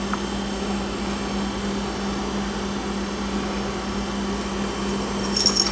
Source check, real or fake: real